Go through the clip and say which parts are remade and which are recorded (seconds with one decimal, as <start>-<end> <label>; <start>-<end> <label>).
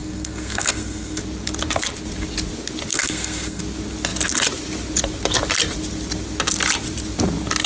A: 0.0-1.2 remade; 1.2-2.9 recorded; 2.9-3.6 remade; 3.6-7.7 recorded